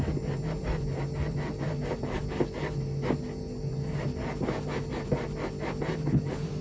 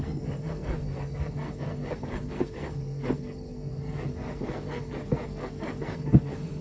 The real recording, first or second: first